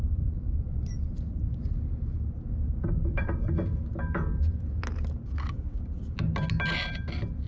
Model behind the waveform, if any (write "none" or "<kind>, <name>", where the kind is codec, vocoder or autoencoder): none